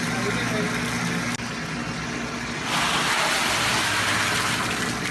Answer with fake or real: real